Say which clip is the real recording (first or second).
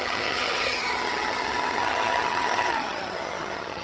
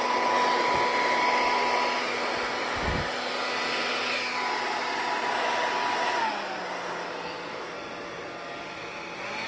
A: second